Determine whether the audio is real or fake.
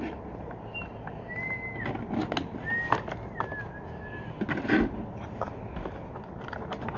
real